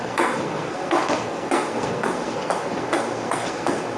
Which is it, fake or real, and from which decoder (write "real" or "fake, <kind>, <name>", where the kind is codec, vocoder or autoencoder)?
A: fake, codec, SNAC